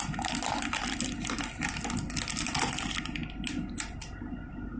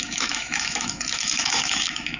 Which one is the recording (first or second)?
first